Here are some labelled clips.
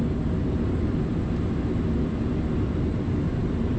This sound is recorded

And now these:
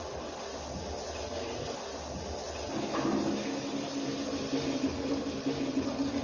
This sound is recorded